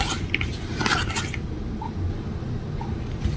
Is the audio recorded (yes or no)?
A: yes